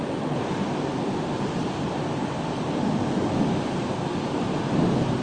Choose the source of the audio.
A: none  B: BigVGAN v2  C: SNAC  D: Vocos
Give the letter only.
A